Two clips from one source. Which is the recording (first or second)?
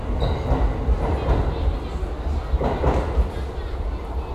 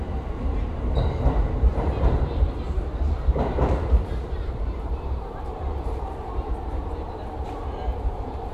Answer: first